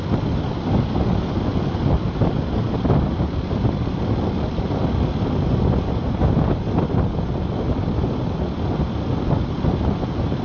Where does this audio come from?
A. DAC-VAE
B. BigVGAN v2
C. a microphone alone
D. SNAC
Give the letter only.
C